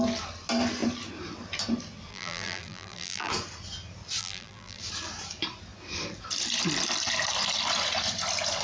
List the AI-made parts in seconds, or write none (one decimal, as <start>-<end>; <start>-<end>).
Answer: 2.1-3.3; 4.2-4.8